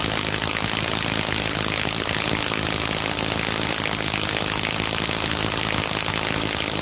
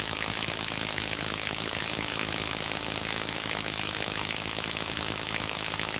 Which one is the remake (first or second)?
second